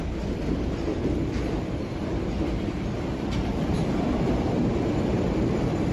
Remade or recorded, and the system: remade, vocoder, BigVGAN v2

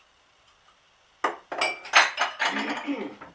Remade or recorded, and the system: recorded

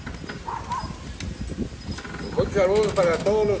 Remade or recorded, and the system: recorded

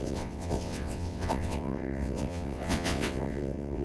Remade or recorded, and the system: remade, vocoder, WaveNeXt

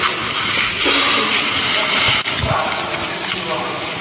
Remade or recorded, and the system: recorded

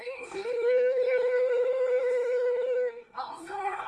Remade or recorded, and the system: remade, codec, SNAC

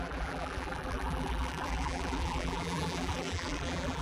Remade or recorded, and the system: remade, vocoder, BigVGAN v2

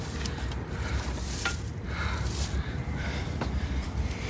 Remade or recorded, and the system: remade, vocoder, BigVGAN v2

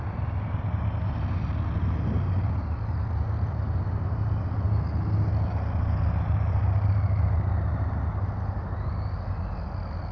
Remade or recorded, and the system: recorded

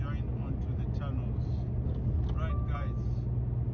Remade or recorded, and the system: recorded